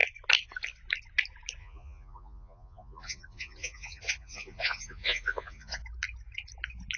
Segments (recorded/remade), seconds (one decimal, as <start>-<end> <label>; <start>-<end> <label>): 0.0-1.6 recorded; 1.6-5.8 remade; 5.8-7.0 recorded